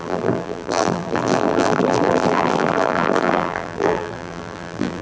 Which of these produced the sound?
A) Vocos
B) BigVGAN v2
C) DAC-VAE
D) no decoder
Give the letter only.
B